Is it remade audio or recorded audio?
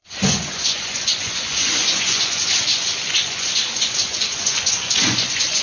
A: remade